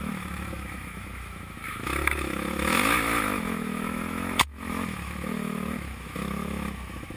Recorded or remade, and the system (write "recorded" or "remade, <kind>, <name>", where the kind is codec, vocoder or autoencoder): remade, autoencoder, DAC-VAE